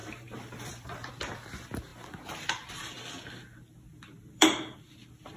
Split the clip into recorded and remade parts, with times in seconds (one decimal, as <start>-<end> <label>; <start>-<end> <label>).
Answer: 0.0-1.1 remade; 1.1-3.9 recorded; 3.9-4.9 remade; 4.9-5.4 recorded